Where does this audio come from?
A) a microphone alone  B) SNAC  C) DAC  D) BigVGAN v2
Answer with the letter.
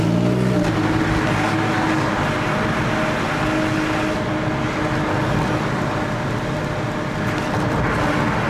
A